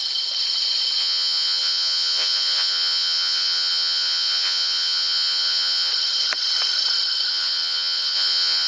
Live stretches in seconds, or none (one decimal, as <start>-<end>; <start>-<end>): 0.0-1.0; 5.9-7.3